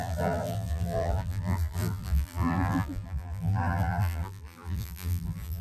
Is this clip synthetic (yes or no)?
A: yes